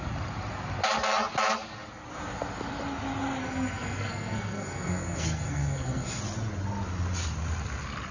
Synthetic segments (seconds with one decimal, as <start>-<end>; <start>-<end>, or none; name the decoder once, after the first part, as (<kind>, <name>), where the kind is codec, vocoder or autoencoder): 3.4-6.2 (codec, SNAC)